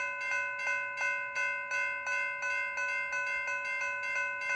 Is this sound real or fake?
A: real